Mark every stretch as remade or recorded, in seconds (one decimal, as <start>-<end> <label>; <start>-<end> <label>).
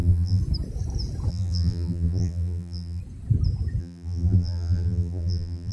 0.0-0.4 remade; 0.4-1.3 recorded; 1.3-3.0 remade; 3.0-3.8 recorded; 3.8-5.7 remade